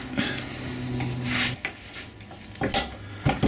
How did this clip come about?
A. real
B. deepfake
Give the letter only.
A